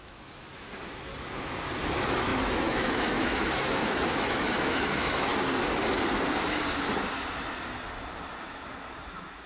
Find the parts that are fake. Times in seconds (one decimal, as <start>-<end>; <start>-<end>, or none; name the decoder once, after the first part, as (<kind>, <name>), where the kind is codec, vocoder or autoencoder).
0.0-1.1 (autoencoder, DAC-VAE); 1.9-5.3; 8.4-9.5